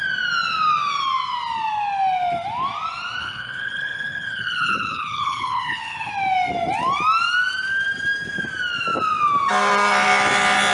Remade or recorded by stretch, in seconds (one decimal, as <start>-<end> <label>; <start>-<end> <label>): 0.0-3.2 recorded; 3.2-6.1 remade; 6.1-10.7 recorded